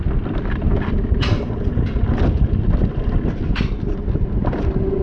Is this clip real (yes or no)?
yes